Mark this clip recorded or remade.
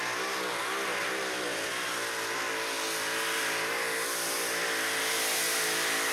recorded